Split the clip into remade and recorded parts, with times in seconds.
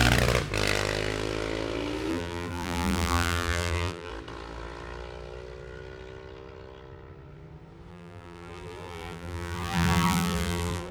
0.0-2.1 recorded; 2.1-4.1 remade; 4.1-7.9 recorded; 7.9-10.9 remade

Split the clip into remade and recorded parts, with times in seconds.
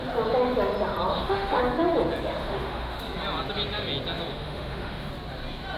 0.0-1.1 recorded; 1.1-1.6 remade; 1.6-2.4 recorded; 2.4-3.0 remade; 3.0-4.3 recorded; 4.3-5.1 remade; 5.1-5.8 recorded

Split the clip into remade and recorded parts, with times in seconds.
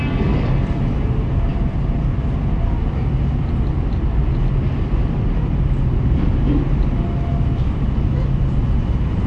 0.0-1.5 recorded; 1.5-5.6 remade; 5.6-7.3 recorded; 7.3-8.8 remade; 8.8-9.3 recorded